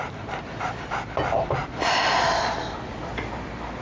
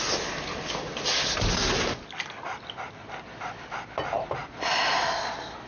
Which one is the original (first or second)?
second